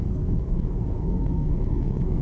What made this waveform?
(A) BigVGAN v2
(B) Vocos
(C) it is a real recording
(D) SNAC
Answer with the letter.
D